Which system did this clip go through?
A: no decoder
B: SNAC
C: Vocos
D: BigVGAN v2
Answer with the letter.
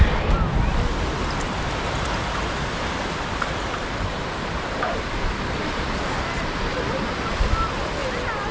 A